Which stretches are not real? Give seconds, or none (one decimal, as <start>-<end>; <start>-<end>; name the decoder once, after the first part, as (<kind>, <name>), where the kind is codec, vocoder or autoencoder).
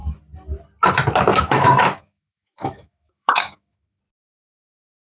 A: 1.3-4.0 (autoencoder, DAC-VAE)